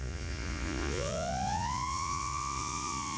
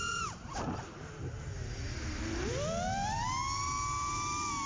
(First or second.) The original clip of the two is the second